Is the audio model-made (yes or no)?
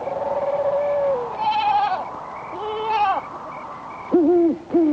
no